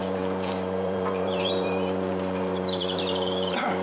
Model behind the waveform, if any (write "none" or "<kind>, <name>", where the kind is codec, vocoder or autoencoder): vocoder, BigVGAN v2